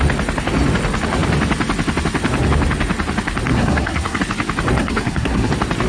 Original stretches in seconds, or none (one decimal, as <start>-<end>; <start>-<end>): 0.0-3.5; 4.2-4.8; 5.5-5.9